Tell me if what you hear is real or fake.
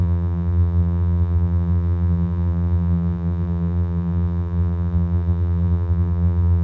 fake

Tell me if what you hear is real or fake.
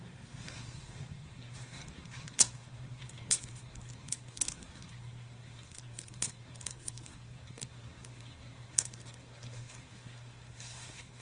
fake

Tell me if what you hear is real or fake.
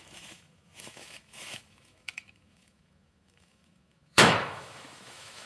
fake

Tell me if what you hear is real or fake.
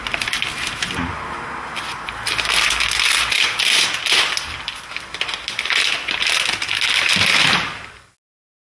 real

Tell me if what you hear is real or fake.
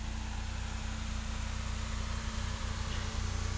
real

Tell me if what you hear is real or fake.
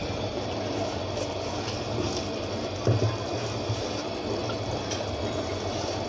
real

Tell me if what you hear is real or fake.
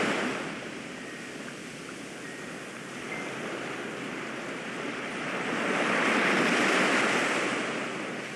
real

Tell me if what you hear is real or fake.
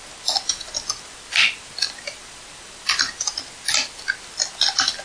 real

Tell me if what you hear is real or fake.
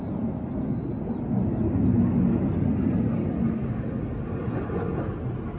real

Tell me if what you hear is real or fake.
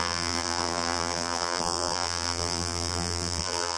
fake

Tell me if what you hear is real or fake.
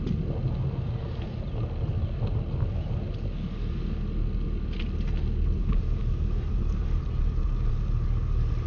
real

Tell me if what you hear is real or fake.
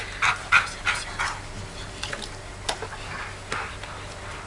real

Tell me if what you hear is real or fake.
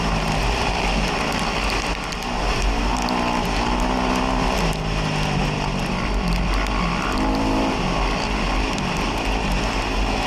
real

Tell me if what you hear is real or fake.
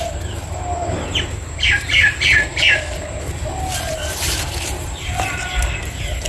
real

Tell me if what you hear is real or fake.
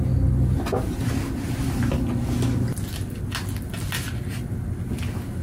real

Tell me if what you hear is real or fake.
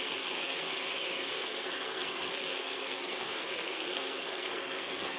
fake